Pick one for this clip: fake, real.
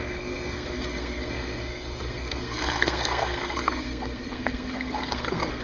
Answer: fake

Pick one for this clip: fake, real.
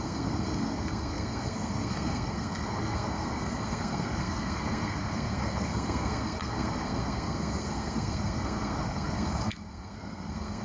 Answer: fake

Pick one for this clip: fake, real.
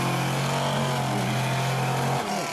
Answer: real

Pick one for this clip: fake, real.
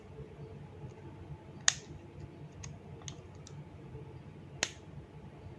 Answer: real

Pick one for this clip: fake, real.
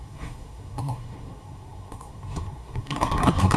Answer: fake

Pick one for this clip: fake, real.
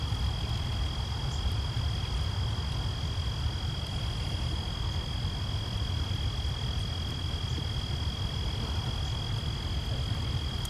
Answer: real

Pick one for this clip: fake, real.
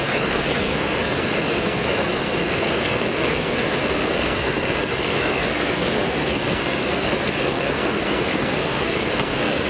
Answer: fake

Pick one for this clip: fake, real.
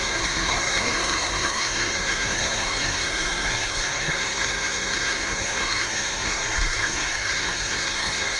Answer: fake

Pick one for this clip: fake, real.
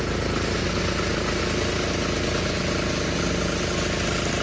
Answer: real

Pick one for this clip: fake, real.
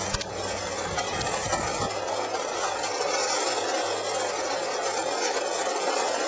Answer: real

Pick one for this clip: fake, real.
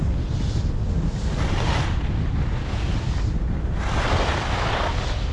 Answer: real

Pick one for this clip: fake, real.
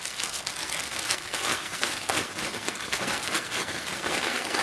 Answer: fake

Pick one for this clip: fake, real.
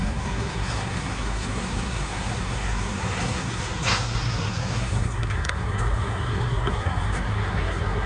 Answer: fake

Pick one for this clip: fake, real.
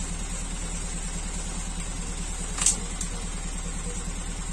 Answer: real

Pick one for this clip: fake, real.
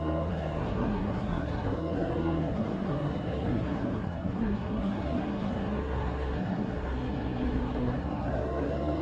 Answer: fake